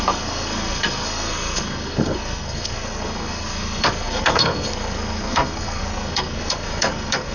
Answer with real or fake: fake